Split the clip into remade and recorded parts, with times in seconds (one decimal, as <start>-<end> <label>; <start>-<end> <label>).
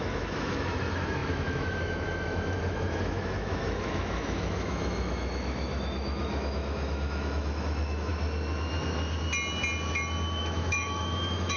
0.0-8.1 remade; 8.1-10.4 recorded; 10.4-11.6 remade